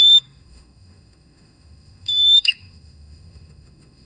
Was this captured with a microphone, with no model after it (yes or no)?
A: no